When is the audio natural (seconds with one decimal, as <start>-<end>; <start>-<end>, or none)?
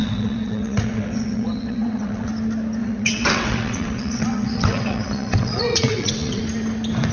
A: 2.3-2.8; 6.4-7.1